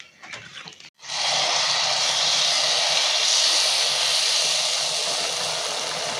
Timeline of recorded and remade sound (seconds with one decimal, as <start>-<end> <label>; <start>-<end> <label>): 0.0-6.2 recorded